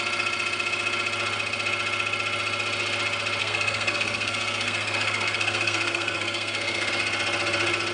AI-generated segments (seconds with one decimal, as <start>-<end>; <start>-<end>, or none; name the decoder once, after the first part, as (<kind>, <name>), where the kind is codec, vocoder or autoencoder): 3.4-6.9 (codec, SNAC)